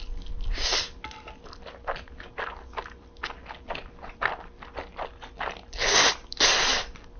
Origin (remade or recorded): recorded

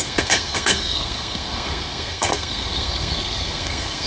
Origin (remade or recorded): remade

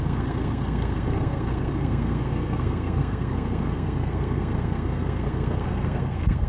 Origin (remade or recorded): remade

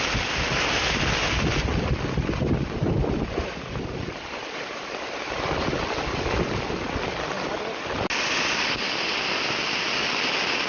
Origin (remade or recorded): recorded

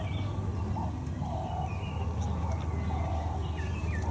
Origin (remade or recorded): recorded